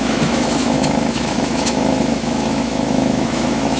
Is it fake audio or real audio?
fake